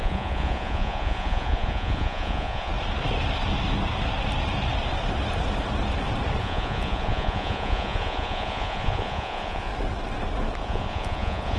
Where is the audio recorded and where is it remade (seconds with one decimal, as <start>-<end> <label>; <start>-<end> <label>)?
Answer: 0.0-2.7 remade; 2.7-6.4 recorded; 6.4-9.7 remade; 9.7-10.6 recorded; 10.6-11.6 remade